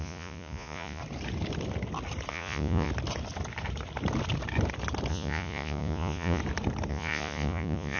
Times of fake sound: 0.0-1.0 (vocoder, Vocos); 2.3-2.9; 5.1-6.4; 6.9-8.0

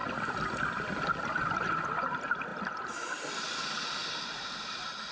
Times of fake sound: 2.5-3.6 (vocoder, BigVGAN v2)